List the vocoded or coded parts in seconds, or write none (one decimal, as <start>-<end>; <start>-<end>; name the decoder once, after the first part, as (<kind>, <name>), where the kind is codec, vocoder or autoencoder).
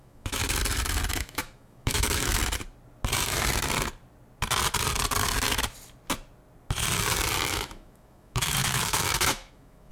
0.0-0.4 (autoencoder, DAC-VAE); 1.1-2.4; 7.5-9.9